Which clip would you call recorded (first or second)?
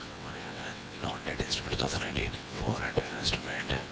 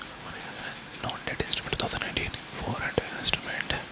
second